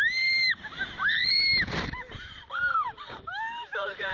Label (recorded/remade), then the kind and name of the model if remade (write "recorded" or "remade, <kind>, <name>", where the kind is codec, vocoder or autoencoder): remade, vocoder, BigVGAN v2